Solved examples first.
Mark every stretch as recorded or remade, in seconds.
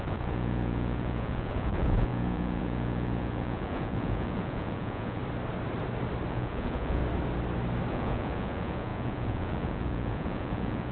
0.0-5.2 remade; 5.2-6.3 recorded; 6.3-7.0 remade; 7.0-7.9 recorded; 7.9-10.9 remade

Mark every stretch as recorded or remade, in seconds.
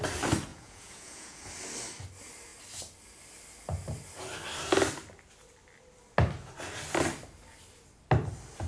0.0-0.5 recorded; 0.5-1.5 remade; 1.5-8.7 recorded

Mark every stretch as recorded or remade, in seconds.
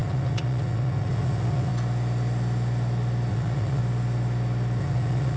0.0-1.7 remade; 1.7-3.3 recorded; 3.3-3.8 remade; 3.8-4.8 recorded; 4.8-5.4 remade